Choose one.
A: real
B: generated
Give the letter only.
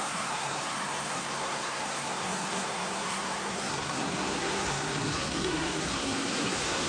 B